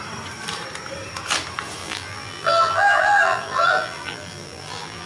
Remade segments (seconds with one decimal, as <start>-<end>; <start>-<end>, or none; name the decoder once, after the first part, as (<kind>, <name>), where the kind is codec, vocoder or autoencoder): 1.8-5.1 (vocoder, BigVGAN v2)